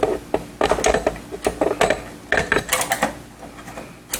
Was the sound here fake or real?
real